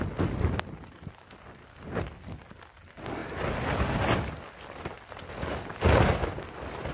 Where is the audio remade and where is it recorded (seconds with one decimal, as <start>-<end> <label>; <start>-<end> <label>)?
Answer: 0.0-6.9 recorded